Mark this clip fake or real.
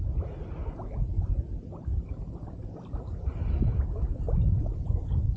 real